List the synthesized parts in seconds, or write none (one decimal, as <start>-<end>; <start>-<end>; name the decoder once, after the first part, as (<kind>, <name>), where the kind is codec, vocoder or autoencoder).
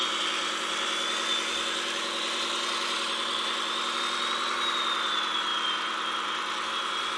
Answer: 0.0-7.2 (vocoder, BigVGAN v2)